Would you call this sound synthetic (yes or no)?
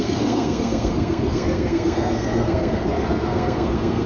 yes